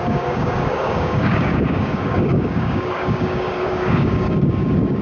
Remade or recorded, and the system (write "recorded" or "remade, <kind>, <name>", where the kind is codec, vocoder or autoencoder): remade, codec, DAC